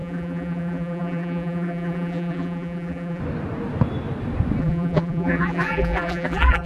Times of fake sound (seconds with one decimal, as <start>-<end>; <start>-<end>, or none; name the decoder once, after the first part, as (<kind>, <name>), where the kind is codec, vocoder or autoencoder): 0.0-3.2 (vocoder, BigVGAN v2); 4.6-6.7